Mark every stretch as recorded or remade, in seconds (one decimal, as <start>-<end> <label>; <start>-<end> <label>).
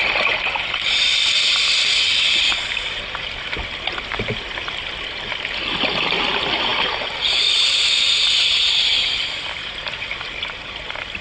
0.0-11.2 recorded